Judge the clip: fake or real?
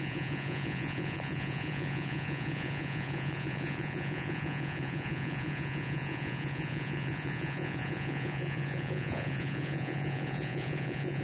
fake